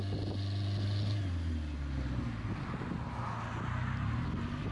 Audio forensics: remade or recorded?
recorded